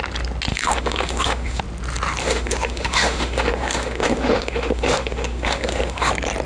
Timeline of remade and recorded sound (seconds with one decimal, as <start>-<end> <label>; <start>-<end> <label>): 0.0-0.5 recorded; 0.5-1.6 remade; 1.6-2.2 recorded; 2.2-6.1 remade; 6.1-6.5 recorded